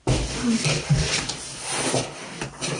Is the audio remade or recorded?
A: recorded